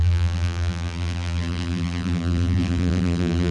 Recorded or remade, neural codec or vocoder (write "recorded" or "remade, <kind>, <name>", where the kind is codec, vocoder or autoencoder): remade, vocoder, BigVGAN v2